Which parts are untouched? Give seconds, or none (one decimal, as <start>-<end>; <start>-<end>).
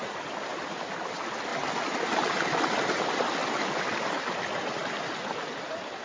0.0-6.0